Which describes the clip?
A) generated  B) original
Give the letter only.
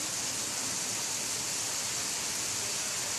B